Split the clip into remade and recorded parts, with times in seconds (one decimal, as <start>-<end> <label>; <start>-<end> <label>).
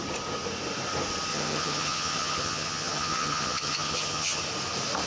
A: 0.0-1.3 recorded; 1.3-4.4 remade; 4.4-5.1 recorded